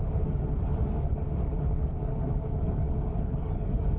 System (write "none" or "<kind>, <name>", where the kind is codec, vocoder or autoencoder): codec, DAC